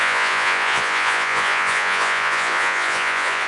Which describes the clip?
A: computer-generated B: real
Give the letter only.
A